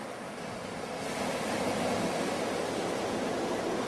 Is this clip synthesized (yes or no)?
no